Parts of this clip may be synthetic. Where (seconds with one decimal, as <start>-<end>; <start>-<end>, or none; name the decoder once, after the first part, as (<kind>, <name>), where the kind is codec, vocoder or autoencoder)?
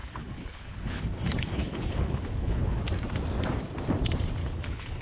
0.0-2.8 (codec, HILCodec); 4.4-5.0